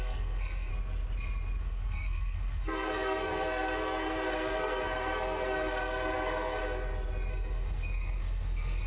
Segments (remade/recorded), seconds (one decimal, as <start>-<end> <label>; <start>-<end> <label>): 0.0-0.7 remade; 0.7-1.6 recorded; 1.6-6.6 remade; 6.6-7.3 recorded; 7.3-8.9 remade